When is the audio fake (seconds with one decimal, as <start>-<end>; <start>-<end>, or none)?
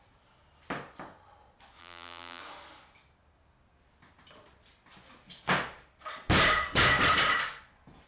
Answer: 1.8-2.4